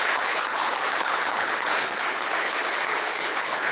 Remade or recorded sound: remade